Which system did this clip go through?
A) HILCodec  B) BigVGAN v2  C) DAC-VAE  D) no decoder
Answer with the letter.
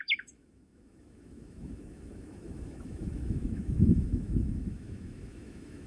C